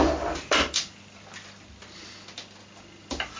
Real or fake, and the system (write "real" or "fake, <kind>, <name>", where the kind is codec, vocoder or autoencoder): real